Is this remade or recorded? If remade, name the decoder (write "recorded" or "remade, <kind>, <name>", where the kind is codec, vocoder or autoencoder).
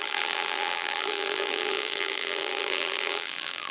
remade, vocoder, BigVGAN v2